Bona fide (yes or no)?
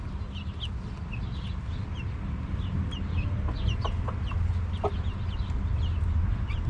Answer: yes